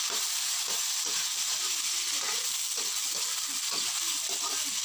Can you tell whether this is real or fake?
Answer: real